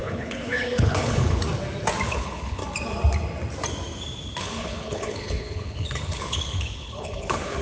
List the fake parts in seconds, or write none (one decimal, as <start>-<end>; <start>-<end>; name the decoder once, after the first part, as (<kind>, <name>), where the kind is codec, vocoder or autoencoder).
0.0-1.4 (codec, HILCodec); 2.1-2.6; 4.4-7.6